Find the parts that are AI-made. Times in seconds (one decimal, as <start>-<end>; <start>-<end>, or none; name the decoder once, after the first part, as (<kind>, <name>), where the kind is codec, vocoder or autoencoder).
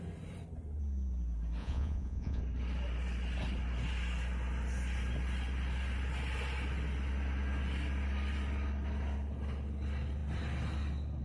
1.6-2.4 (vocoder, Vocos)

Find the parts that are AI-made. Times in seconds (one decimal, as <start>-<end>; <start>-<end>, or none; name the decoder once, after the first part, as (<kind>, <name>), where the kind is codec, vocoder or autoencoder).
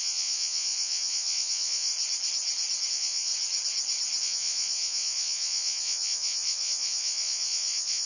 0.0-1.9 (vocoder, Vocos); 2.9-3.3; 4.2-8.1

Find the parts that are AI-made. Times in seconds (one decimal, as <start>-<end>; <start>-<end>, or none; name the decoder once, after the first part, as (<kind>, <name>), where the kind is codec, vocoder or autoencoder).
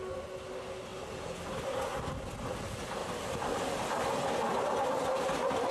none